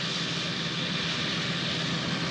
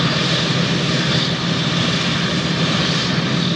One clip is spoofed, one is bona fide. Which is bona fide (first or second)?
first